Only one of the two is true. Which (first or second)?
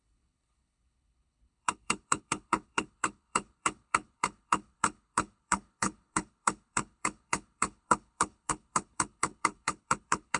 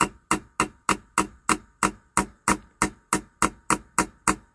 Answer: second